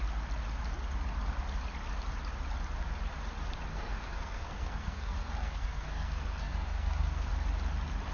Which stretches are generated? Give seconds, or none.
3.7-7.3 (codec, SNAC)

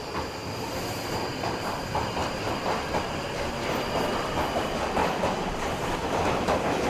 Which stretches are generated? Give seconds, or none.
5.0-6.2 (vocoder, BigVGAN v2)

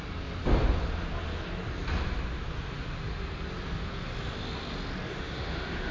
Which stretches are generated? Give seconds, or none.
5.1-5.9 (autoencoder, DAC-VAE)

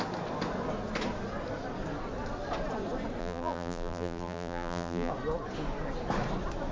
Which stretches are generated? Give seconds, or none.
3.2-5.1 (vocoder, BigVGAN v2)

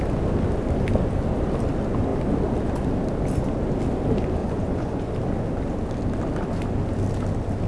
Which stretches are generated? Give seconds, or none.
4.4-5.1 (vocoder, Vocos)